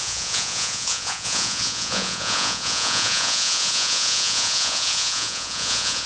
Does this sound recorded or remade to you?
remade